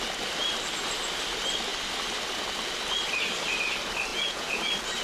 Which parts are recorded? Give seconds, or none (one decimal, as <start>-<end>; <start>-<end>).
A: 0.0-4.1; 4.6-5.0